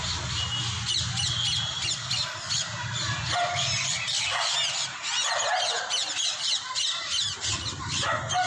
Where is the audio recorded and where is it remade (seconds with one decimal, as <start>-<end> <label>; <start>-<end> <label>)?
0.0-8.5 recorded